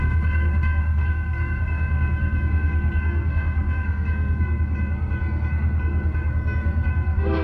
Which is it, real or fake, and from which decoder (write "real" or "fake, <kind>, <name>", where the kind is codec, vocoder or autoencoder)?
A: fake, codec, SNAC